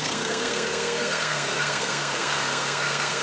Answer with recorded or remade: remade